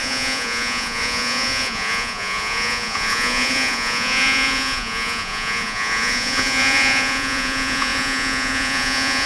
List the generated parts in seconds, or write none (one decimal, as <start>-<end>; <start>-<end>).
0.0-9.3